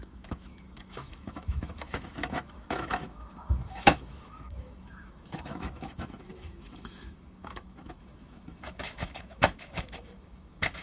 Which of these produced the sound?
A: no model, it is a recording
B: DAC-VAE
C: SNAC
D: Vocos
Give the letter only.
B